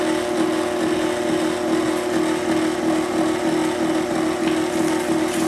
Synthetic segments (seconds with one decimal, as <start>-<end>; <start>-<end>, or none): none